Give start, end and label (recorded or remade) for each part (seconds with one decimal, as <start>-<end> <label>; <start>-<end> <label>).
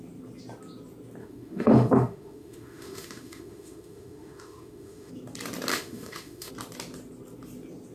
0.0-1.2 recorded; 1.2-5.1 remade; 5.1-5.7 recorded; 5.7-6.5 remade; 6.5-7.9 recorded